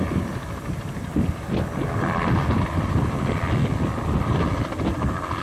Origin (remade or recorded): recorded